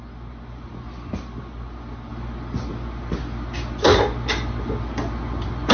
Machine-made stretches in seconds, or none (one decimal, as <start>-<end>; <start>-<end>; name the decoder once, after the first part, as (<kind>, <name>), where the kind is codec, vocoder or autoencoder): none